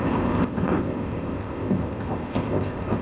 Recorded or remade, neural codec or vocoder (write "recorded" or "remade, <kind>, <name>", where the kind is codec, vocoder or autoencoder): remade, codec, ZipCodec